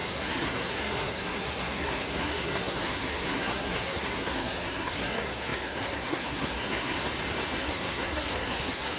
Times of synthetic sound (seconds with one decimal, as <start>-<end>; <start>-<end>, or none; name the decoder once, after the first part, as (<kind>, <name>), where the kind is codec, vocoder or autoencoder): 0.0-7.0 (codec, SNAC); 7.6-9.0